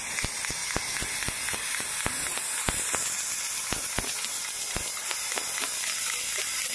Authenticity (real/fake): real